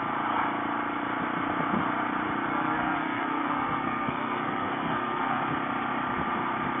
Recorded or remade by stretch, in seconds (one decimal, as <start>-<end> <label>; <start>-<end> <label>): 0.0-2.5 recorded; 2.5-5.4 remade; 5.4-6.8 recorded